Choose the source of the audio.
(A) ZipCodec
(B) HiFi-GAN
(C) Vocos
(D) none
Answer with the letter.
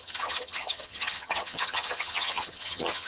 B